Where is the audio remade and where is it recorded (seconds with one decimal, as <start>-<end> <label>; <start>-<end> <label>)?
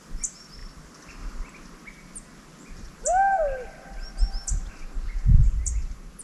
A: 0.0-6.2 recorded